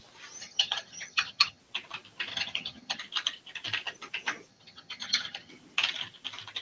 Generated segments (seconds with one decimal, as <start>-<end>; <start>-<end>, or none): 0.4-1.6; 2.3-3.0; 4.5-5.5